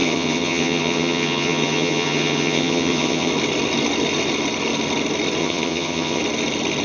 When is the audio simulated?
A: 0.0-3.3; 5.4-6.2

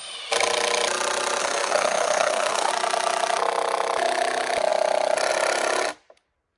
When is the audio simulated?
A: 1.4-2.7

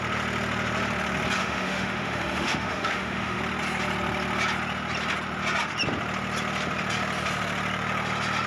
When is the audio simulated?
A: 1.4-3.4

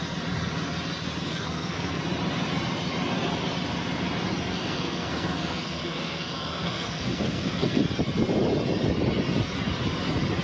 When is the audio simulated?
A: 1.3-2.0; 4.5-7.8

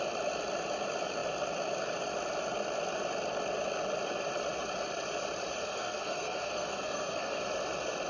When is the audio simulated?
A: 5.6-7.4

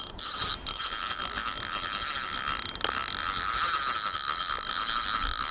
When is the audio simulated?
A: none

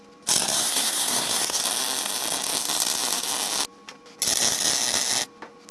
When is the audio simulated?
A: 0.4-1.6

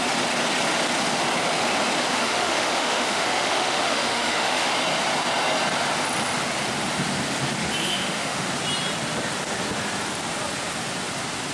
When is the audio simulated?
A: 2.1-4.7; 7.8-8.5